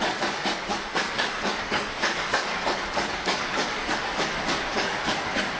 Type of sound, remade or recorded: remade